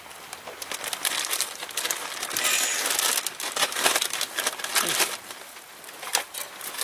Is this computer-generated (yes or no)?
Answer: no